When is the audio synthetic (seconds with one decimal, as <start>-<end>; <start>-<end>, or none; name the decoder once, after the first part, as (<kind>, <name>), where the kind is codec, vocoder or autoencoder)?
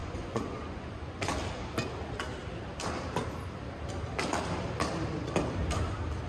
0.0-1.3 (vocoder, Vocos)